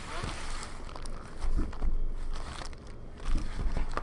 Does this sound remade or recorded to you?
recorded